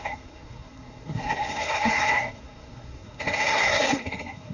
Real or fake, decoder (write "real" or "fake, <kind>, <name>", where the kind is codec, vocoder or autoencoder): fake, codec, SNAC